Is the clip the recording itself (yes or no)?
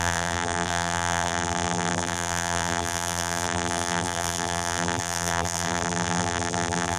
no